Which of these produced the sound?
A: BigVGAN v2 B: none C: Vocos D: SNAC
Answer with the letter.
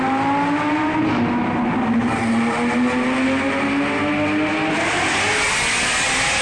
B